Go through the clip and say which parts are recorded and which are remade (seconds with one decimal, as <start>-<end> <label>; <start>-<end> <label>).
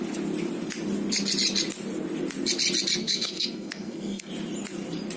0.0-3.0 recorded; 3.0-4.3 remade; 4.3-5.2 recorded